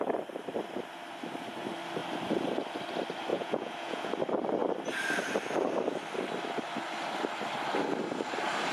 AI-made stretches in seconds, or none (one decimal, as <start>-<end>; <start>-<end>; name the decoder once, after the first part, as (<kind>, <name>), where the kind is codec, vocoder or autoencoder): 3.3-4.1 (vocoder, Vocos)